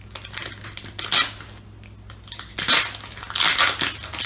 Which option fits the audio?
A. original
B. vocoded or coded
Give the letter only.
A